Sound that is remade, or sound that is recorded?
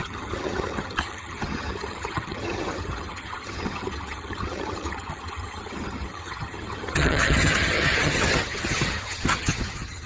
remade